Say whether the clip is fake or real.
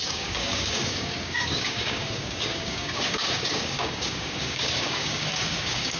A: fake